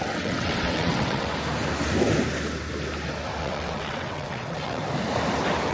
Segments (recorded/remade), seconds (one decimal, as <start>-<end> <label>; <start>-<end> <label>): 0.0-1.3 remade; 1.3-3.4 recorded; 3.4-4.8 remade; 4.8-5.7 recorded